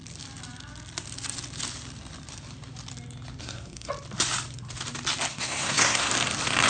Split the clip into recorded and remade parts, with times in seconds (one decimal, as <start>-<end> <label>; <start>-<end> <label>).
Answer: 0.0-3.4 recorded; 3.4-3.9 remade; 3.9-5.3 recorded; 5.3-6.1 remade; 6.1-6.7 recorded